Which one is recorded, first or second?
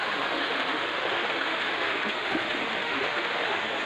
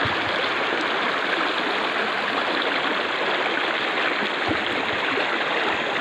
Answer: second